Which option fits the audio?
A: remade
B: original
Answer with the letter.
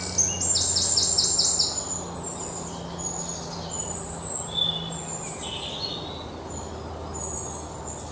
B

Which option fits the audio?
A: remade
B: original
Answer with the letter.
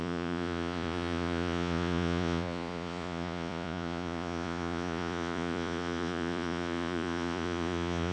A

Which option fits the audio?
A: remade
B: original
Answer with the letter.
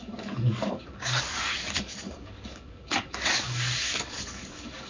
A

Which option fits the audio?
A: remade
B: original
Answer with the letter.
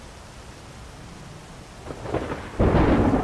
B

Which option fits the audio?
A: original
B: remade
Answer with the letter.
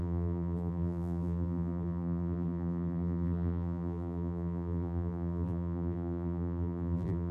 B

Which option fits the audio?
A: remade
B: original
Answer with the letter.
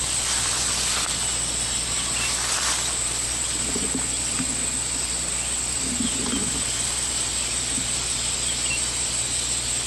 B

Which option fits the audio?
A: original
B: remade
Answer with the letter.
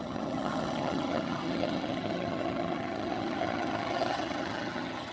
B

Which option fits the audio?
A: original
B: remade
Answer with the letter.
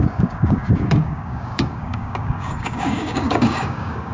B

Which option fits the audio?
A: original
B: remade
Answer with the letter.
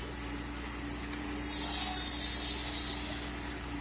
A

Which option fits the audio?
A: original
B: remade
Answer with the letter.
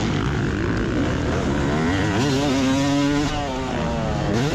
A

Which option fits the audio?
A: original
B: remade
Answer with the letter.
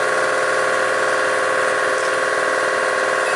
A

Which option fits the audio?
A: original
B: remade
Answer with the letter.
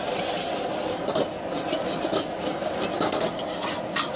A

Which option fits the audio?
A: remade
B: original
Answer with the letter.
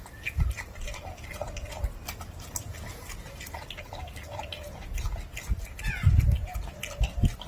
B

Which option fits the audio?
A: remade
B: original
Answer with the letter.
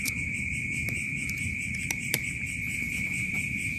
A